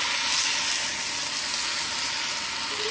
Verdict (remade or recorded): recorded